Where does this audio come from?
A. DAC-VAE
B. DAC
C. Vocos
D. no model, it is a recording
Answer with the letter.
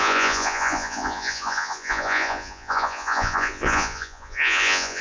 C